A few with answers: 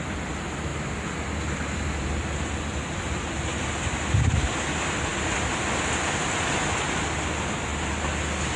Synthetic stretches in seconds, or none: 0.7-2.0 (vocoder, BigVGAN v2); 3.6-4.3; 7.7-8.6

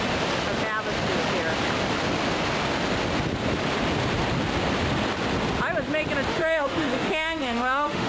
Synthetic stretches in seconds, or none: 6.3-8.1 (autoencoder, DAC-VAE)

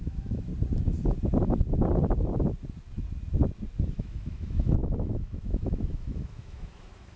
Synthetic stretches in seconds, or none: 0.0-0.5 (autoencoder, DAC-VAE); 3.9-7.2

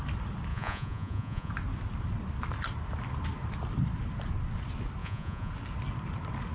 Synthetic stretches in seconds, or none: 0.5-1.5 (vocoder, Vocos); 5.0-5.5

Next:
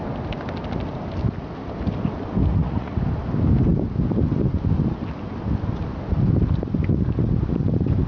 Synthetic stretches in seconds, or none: 2.5-3.0 (vocoder, Vocos)

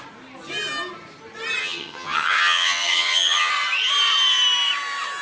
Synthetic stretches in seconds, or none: 1.6-3.5 (vocoder, HiFi-GAN)